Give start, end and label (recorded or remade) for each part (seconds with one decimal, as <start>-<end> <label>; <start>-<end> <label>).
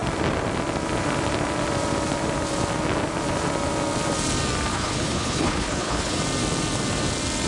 0.0-4.7 recorded; 4.7-6.2 remade; 6.2-7.5 recorded